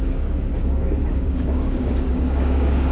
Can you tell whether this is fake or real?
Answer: fake